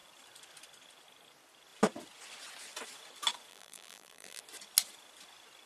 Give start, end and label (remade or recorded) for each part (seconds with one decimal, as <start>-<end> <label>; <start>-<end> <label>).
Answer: 0.0-3.5 recorded; 3.5-4.4 remade; 4.4-5.7 recorded